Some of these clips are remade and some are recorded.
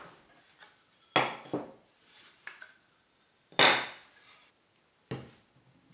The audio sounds recorded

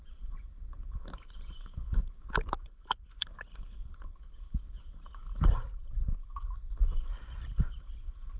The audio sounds remade